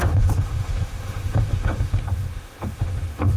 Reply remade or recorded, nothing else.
remade